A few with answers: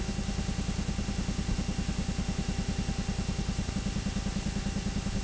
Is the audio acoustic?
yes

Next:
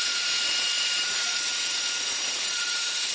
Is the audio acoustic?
no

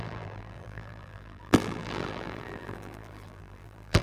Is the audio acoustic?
no